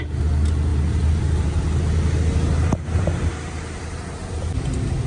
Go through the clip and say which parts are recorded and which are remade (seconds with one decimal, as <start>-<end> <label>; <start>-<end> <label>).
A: 0.0-0.7 recorded; 0.7-1.6 remade; 1.6-2.6 recorded; 2.6-3.8 remade; 3.8-5.1 recorded